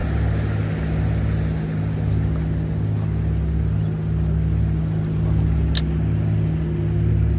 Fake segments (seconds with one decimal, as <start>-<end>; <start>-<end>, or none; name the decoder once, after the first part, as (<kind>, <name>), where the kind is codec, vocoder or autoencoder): none